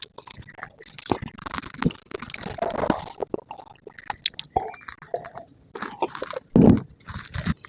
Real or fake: real